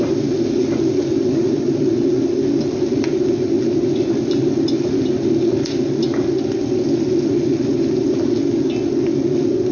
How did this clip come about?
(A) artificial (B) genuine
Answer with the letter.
B